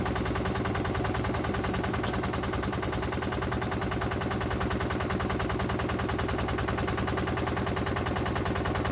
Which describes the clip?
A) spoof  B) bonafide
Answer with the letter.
B